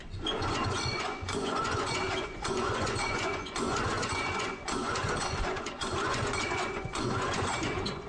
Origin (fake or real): fake